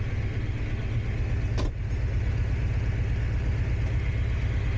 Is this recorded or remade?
recorded